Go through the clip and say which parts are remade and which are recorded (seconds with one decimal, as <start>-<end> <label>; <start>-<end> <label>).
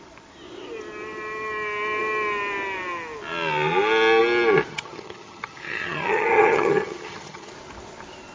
0.0-4.7 recorded; 4.7-7.5 remade; 7.5-8.3 recorded